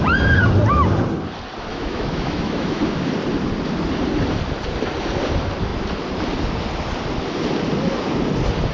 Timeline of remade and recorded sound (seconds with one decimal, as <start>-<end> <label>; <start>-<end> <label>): 0.0-1.7 recorded; 1.7-2.8 remade; 2.8-8.7 recorded